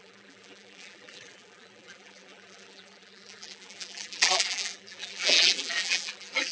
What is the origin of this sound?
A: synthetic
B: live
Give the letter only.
A